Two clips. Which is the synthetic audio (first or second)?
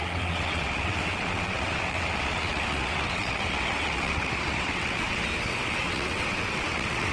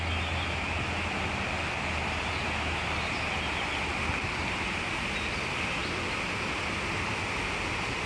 first